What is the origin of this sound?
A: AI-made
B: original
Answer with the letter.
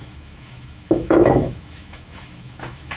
A